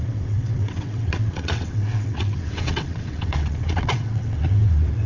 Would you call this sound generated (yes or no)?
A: yes